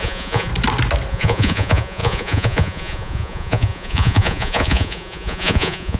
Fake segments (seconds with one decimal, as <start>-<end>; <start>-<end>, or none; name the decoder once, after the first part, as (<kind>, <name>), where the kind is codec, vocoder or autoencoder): 0.0-0.5 (vocoder, Vocos); 1.1-6.0